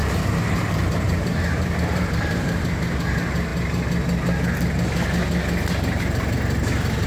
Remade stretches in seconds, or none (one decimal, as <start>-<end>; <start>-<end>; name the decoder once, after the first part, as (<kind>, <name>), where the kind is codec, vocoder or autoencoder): 0.0-2.5 (vocoder, BigVGAN v2)